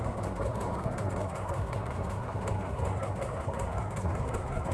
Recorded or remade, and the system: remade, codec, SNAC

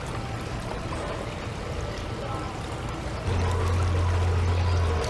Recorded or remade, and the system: recorded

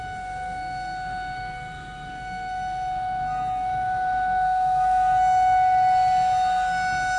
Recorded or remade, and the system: remade, codec, SNAC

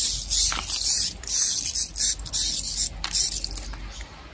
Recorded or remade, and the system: recorded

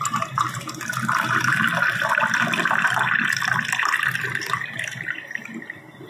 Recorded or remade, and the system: recorded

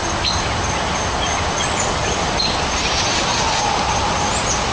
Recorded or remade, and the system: recorded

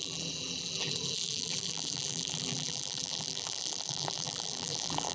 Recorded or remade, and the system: remade, vocoder, BigVGAN v2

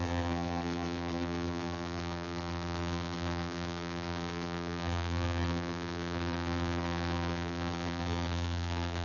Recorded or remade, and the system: remade, vocoder, BigVGAN v2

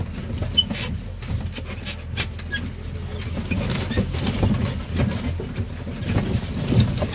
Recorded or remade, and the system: recorded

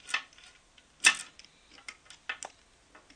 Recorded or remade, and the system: recorded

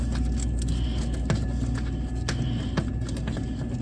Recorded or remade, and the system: recorded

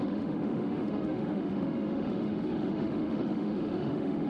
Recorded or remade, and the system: remade, autoencoder, DAC-VAE